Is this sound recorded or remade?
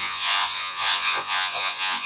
remade